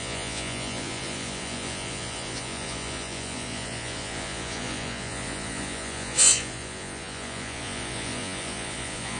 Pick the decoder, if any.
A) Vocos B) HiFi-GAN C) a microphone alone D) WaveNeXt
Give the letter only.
A